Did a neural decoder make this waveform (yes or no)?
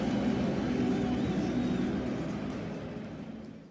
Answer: no